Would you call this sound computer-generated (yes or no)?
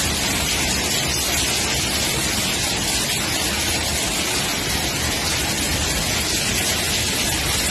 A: no